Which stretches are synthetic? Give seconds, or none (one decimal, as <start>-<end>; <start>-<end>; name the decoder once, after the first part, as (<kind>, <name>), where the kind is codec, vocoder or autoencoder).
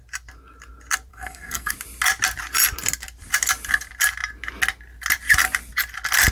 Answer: 1.1-1.7 (codec, SNAC)